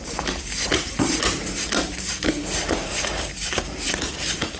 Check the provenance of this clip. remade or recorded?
remade